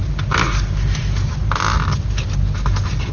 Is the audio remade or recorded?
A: recorded